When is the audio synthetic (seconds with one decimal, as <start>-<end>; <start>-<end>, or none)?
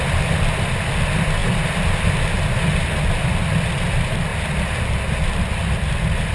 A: none